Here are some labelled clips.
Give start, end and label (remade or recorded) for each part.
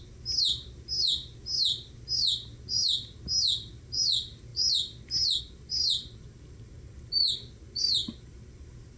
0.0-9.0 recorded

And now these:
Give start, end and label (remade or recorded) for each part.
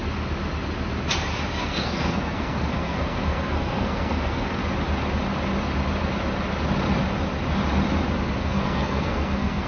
0.0-1.6 recorded; 1.6-4.6 remade; 4.6-8.4 recorded; 8.4-9.7 remade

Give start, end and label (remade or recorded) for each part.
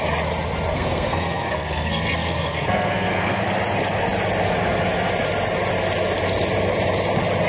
0.0-0.7 recorded; 0.7-3.4 remade; 3.4-7.5 recorded